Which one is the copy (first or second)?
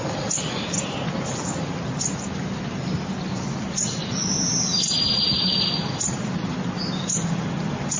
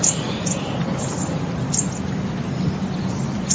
second